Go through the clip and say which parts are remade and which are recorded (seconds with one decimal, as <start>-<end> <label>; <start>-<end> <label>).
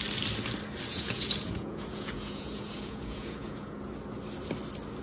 0.0-0.9 recorded; 0.9-3.9 remade; 3.9-5.0 recorded